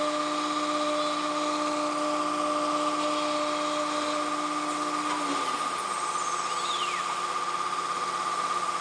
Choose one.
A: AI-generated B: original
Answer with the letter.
B